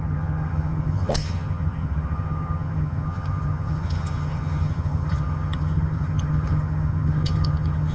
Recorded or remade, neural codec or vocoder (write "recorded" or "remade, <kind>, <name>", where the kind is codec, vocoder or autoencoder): remade, vocoder, HiFi-GAN